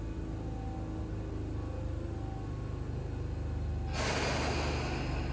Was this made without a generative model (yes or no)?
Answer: yes